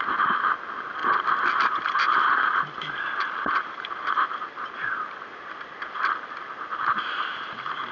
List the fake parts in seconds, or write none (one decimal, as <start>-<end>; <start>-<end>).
none